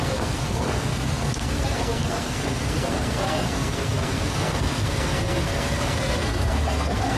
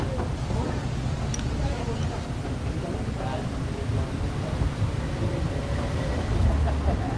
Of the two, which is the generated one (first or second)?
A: first